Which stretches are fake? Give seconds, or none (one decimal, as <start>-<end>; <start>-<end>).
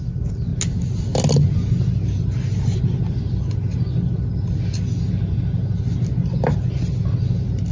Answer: none